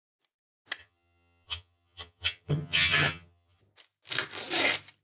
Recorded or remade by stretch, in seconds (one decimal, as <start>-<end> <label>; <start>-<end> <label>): 0.0-0.8 recorded; 0.8-3.6 remade; 3.6-5.0 recorded